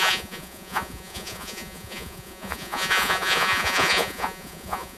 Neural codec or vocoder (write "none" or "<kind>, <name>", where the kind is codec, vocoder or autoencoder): vocoder, Vocos